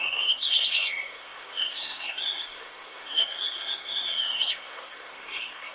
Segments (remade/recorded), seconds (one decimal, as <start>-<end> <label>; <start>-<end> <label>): 0.0-5.7 remade